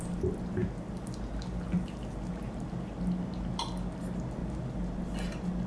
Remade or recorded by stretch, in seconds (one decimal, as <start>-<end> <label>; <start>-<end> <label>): 0.0-5.7 recorded